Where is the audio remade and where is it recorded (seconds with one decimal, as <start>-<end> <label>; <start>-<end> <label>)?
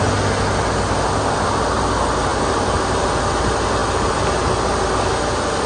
0.0-5.7 recorded